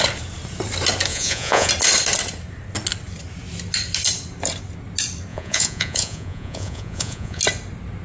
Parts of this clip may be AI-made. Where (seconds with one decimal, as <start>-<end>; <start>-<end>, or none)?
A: 1.1-1.7; 5.3-7.4